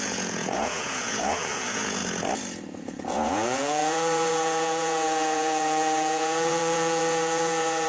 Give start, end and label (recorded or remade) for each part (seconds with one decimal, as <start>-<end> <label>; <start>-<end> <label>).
0.0-2.0 remade; 2.0-2.8 recorded; 2.8-7.9 remade